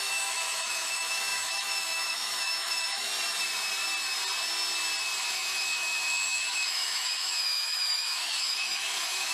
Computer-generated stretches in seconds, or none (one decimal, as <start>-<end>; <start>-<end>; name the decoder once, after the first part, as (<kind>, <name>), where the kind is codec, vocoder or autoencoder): 0.0-3.1 (autoencoder, DAC-VAE); 5.2-9.3